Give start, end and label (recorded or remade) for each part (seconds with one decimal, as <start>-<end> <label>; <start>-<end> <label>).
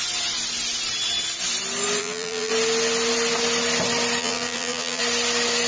0.0-2.0 recorded; 2.0-2.5 remade; 2.5-4.2 recorded; 4.2-5.0 remade; 5.0-5.7 recorded